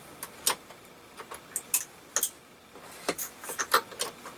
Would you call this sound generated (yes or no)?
no